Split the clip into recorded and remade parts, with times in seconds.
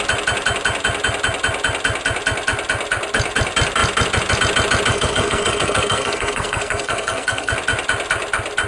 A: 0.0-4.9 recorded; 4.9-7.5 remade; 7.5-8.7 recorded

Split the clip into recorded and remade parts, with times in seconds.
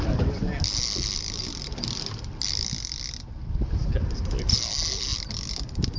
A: 0.0-6.0 recorded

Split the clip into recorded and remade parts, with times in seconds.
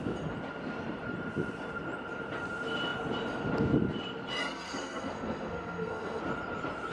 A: 0.0-4.4 recorded; 4.4-6.2 remade; 6.2-6.9 recorded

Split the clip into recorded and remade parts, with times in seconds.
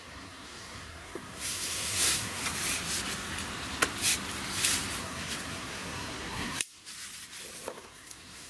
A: 0.0-2.4 remade; 2.4-5.0 recorded; 5.0-6.9 remade; 6.9-7.7 recorded; 7.7-8.5 remade